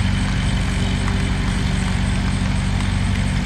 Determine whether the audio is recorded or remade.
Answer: recorded